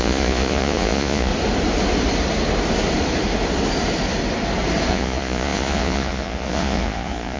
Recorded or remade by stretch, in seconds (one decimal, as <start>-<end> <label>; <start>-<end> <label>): 0.0-1.3 remade; 1.3-4.9 recorded; 4.9-7.4 remade